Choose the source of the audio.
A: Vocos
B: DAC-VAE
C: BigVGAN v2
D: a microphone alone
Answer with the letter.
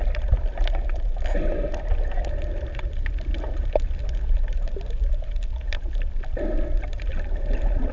D